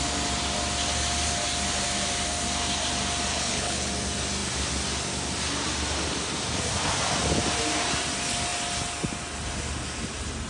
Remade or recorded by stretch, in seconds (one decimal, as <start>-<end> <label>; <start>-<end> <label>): 0.0-3.3 recorded; 3.3-3.9 remade; 3.9-10.5 recorded